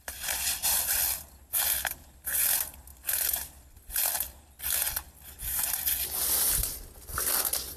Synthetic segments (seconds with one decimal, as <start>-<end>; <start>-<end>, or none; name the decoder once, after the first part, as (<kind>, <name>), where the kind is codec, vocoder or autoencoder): none